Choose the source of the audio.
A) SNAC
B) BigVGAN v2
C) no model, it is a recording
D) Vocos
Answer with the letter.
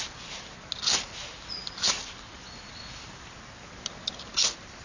C